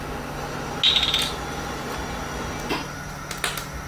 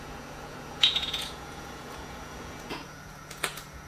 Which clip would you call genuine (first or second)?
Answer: first